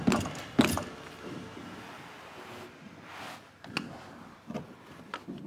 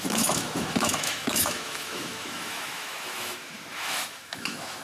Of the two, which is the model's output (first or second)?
second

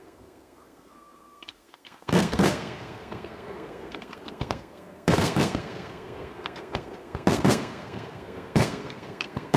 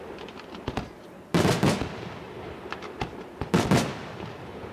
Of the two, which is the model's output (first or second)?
first